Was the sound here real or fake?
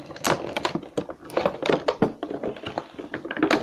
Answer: real